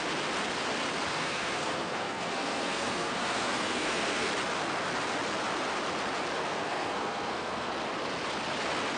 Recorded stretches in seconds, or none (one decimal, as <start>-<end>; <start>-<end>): 0.0-1.1; 4.3-6.4; 7.7-9.0